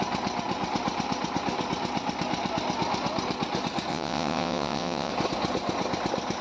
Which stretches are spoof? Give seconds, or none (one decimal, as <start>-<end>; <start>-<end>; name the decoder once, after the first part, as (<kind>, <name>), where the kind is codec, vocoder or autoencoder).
3.9-5.1 (vocoder, WaveNeXt)